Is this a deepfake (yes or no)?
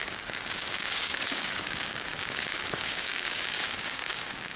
yes